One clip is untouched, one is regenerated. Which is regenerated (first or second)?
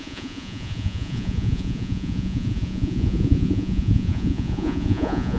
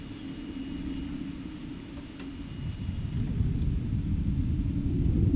first